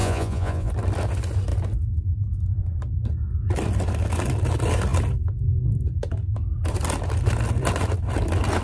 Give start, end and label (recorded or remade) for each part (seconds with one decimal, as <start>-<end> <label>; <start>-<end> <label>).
0.0-0.7 remade; 0.7-8.6 recorded